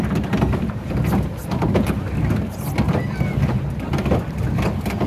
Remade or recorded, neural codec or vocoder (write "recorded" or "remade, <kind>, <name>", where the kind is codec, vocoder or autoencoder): remade, vocoder, BigVGAN v2